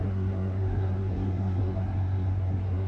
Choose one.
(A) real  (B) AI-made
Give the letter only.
B